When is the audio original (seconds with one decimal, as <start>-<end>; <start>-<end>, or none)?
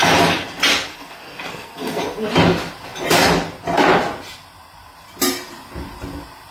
0.0-0.9; 2.0-6.5